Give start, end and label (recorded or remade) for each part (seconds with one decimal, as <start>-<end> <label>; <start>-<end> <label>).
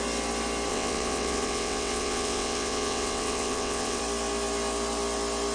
0.0-0.7 recorded; 0.7-4.0 remade; 4.0-5.5 recorded